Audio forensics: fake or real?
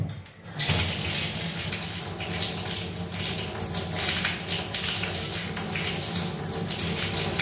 real